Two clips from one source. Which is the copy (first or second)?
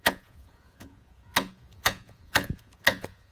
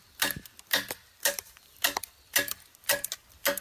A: first